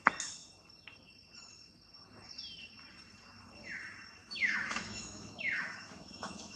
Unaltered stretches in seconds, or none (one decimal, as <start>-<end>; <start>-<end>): 0.0-4.2